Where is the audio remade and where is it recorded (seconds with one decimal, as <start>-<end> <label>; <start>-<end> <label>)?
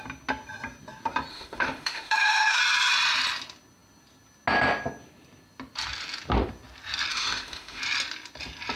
0.0-1.3 recorded; 1.3-2.6 remade; 2.6-7.1 recorded; 7.1-7.8 remade; 7.8-8.8 recorded